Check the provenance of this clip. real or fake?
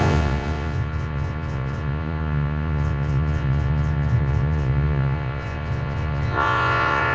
fake